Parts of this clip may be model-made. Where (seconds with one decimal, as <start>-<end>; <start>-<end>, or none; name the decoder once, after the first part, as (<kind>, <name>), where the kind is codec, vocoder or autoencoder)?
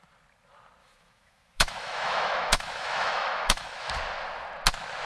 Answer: 0.8-3.9 (autoencoder, DAC-VAE)